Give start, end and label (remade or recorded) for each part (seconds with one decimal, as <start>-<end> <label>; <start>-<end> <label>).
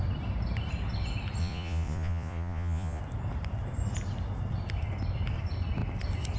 0.0-1.4 recorded; 1.4-3.0 remade; 3.0-6.4 recorded